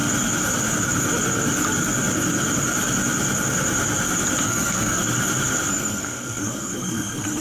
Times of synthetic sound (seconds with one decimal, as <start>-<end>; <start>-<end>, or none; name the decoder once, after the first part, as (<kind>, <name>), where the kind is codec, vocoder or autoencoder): 4.4-5.0 (codec, SNAC); 5.7-7.4